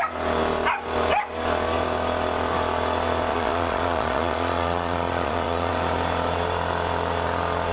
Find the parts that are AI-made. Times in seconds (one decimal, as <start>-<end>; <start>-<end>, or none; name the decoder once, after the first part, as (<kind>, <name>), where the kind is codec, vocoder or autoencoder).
3.3-5.7 (vocoder, Vocos)